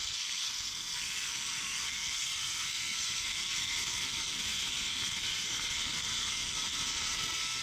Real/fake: fake